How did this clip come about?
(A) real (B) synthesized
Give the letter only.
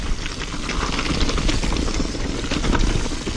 A